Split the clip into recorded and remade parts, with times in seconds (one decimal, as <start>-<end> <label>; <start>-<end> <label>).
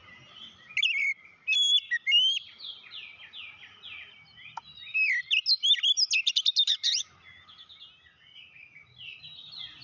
0.0-9.8 recorded